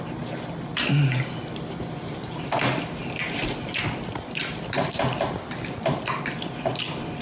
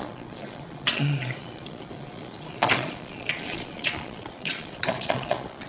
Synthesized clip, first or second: second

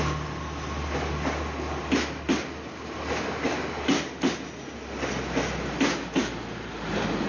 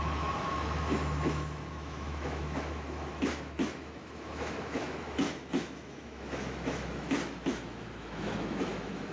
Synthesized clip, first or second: second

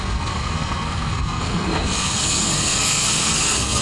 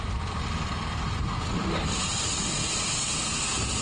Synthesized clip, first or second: first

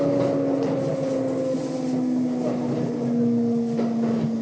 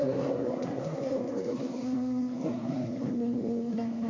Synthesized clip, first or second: second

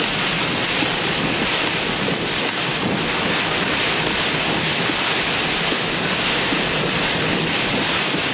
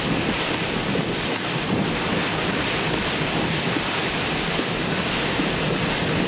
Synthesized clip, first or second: second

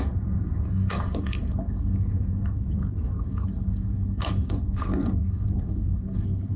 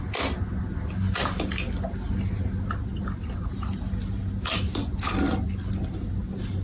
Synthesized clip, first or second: first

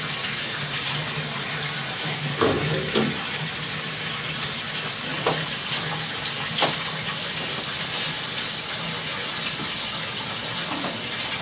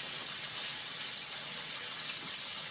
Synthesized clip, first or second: second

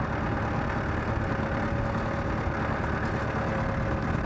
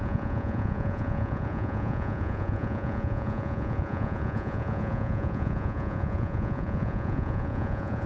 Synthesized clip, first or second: second